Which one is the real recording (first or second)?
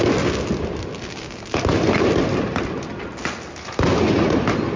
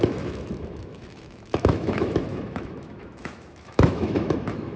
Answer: first